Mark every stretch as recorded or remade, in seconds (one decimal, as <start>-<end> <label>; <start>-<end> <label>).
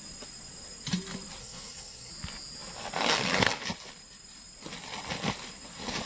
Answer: 0.0-1.4 recorded; 1.4-2.1 remade; 2.1-6.1 recorded